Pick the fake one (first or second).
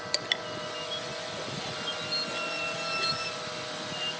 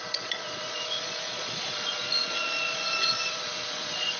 second